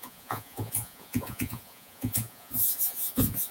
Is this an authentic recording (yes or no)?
no